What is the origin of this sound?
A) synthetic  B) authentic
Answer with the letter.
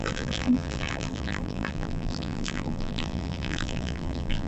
A